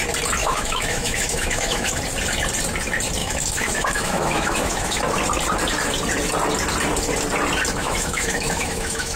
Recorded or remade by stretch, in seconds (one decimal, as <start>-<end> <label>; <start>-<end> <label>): 0.0-0.4 recorded; 0.4-2.0 remade; 2.0-3.2 recorded; 3.2-5.0 remade; 5.0-7.8 recorded; 7.8-9.2 remade